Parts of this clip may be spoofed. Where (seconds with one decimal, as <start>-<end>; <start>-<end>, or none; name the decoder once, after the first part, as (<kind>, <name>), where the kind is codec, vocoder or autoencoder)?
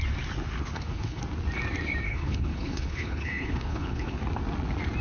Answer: 0.6-1.2 (codec, HILCodec); 2.1-4.2